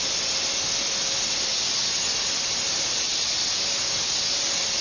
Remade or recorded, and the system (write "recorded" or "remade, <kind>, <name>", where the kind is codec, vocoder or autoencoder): recorded